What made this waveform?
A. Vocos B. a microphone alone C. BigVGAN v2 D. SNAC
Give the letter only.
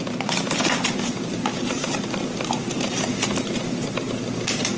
B